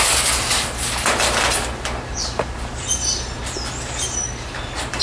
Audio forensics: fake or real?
real